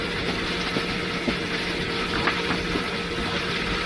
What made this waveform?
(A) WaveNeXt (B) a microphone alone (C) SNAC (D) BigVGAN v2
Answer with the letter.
B